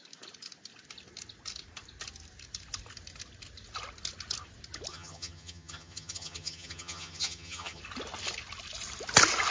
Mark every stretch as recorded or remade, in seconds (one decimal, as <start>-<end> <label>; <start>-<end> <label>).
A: 0.0-4.9 recorded; 4.9-7.8 remade; 7.8-9.5 recorded